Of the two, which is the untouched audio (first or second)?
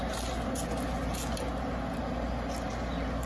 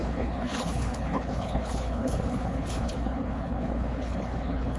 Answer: first